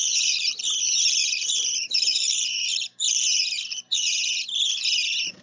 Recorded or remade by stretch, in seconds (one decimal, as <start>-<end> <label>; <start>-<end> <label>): 0.0-0.5 remade; 0.5-1.2 recorded; 1.2-4.2 remade; 4.2-5.4 recorded